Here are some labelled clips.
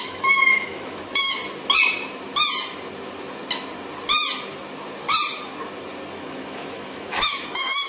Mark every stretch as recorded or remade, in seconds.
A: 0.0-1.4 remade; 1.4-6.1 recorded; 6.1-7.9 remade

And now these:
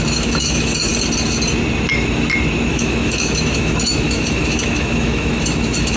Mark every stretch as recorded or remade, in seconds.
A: 0.0-0.9 remade; 0.9-2.7 recorded; 2.7-6.0 remade

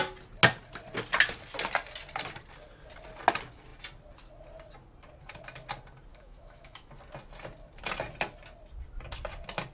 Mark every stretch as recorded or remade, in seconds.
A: 0.0-6.1 recorded; 6.1-6.9 remade; 6.9-9.7 recorded

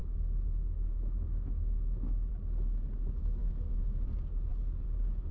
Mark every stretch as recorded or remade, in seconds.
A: 0.0-2.3 remade; 2.3-3.4 recorded; 3.4-4.1 remade; 4.1-5.3 recorded

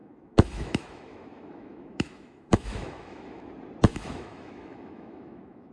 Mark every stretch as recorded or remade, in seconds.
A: 0.0-3.4 remade; 3.4-3.9 recorded; 3.9-5.7 remade

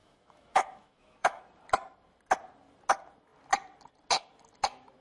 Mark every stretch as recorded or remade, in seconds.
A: 0.0-1.4 remade; 1.4-5.0 recorded

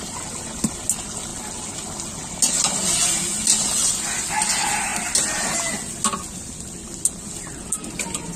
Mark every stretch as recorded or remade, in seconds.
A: 0.0-8.4 recorded

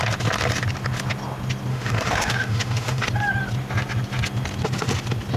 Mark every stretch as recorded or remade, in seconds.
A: 0.0-1.7 recorded; 1.7-3.1 remade; 3.1-5.4 recorded